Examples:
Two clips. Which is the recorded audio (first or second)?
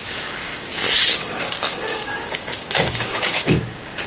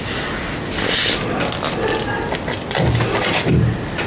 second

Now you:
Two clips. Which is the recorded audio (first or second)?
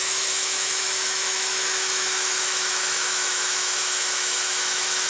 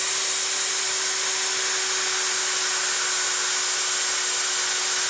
second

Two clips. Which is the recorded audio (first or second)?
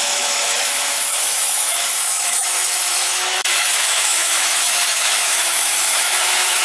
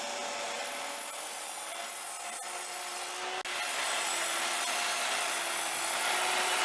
second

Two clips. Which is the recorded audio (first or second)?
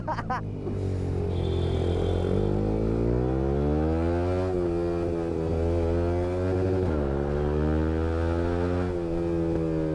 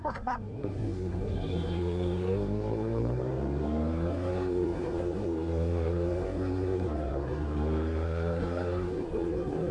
first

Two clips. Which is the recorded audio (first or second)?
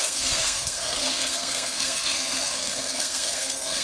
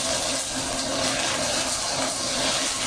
second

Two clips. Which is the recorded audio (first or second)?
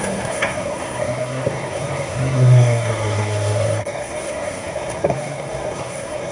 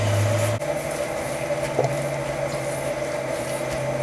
second